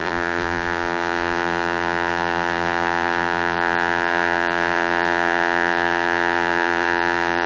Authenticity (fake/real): fake